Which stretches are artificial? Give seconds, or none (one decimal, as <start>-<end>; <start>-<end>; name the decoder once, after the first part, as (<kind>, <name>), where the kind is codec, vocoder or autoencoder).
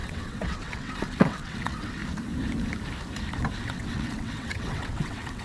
0.0-2.0 (vocoder, WaveNeXt); 3.6-5.4